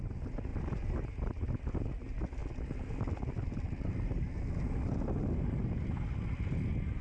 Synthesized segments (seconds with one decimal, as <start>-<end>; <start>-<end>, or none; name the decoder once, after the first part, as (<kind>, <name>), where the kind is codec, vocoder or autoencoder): 0.5-1.7 (vocoder, BigVGAN v2)